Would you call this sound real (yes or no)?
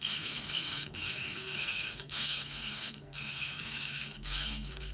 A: no